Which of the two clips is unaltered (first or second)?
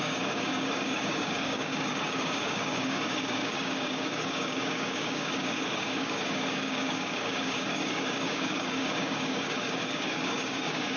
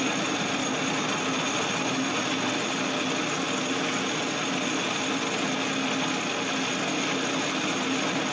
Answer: second